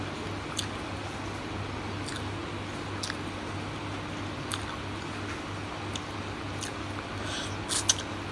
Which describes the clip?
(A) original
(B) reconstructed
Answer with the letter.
A